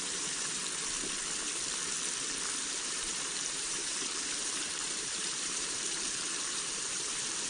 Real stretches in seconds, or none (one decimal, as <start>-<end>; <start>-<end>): 0.6-2.6